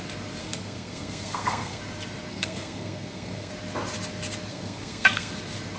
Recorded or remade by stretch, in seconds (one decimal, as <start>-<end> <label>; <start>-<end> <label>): 0.0-0.4 recorded; 0.4-1.8 remade; 1.8-2.3 recorded; 2.3-3.5 remade; 3.5-4.5 recorded; 4.5-5.3 remade; 5.3-5.8 recorded